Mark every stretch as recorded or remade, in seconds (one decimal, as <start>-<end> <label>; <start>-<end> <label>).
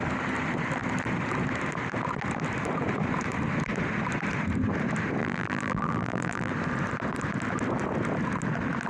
0.0-5.2 recorded; 5.2-6.5 remade; 6.5-8.9 recorded